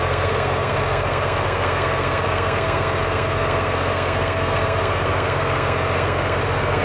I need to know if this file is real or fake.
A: fake